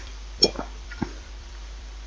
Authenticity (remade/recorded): remade